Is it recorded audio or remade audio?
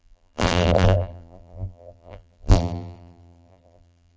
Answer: remade